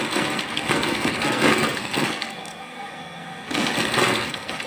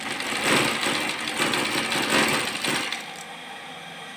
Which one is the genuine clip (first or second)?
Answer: second